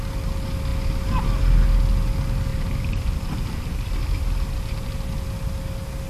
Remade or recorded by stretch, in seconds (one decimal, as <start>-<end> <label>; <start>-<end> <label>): 0.0-2.5 recorded; 2.5-3.1 remade; 3.1-6.1 recorded